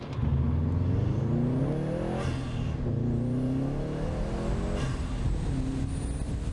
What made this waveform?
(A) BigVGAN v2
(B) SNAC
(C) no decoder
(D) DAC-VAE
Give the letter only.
C